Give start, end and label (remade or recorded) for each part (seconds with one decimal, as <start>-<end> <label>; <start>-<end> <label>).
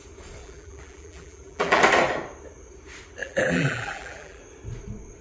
0.0-0.4 recorded; 0.4-1.8 remade; 1.8-3.2 recorded; 3.2-4.4 remade; 4.4-5.2 recorded